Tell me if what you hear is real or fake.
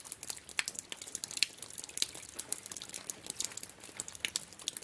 real